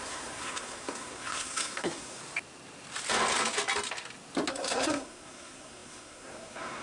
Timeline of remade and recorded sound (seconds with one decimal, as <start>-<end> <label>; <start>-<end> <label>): 0.0-2.2 remade; 2.2-4.5 recorded; 4.5-6.8 remade